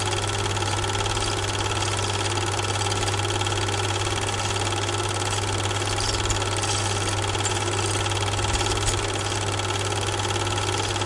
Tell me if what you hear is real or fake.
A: real